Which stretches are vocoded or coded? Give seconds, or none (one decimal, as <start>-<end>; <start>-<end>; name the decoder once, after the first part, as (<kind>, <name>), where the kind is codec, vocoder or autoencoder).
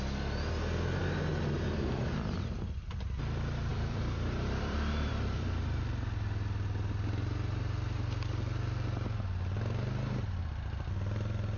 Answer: 3.7-5.8 (vocoder, BigVGAN v2)